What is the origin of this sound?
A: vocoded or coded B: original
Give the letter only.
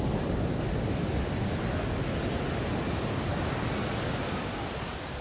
B